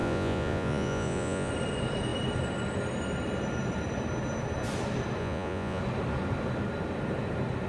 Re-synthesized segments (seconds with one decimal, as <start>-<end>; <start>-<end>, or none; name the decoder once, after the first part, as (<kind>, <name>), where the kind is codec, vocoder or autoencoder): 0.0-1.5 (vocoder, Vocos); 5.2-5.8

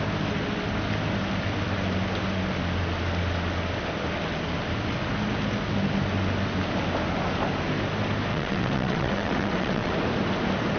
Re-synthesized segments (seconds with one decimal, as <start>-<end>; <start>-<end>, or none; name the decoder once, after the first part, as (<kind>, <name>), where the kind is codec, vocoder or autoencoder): 8.3-9.9 (vocoder, WaveNeXt)

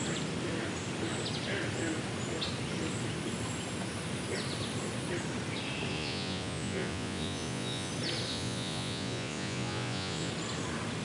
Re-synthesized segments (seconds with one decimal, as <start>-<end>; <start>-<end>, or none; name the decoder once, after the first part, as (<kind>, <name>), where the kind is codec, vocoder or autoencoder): 5.9-7.9 (vocoder, Vocos); 8.3-10.3